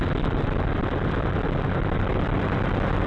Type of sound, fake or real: real